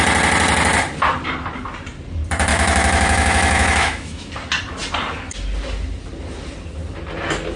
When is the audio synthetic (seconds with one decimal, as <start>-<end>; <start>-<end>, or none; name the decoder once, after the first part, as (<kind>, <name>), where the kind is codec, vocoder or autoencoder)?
2.5-4.3 (autoencoder, DAC-VAE)